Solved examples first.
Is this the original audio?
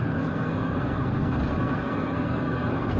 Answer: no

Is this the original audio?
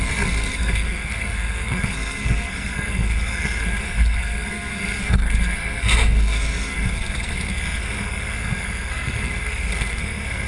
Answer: no